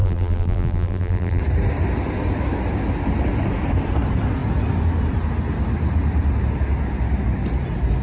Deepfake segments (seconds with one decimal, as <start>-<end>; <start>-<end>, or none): 0.0-1.4